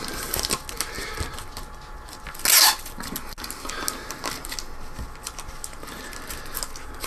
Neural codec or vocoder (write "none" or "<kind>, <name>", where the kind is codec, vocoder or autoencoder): none